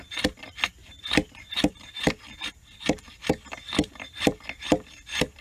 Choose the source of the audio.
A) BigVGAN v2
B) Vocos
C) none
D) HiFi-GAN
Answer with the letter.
A